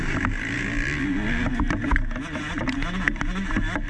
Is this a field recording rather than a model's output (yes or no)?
yes